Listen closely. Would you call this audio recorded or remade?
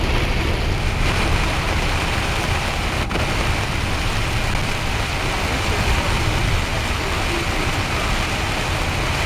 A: recorded